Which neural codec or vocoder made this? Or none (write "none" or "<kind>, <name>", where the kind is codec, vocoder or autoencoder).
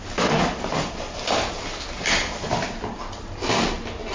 none